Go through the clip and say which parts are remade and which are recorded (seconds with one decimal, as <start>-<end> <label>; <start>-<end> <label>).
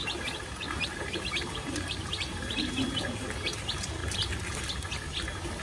0.0-2.7 remade; 2.7-5.6 recorded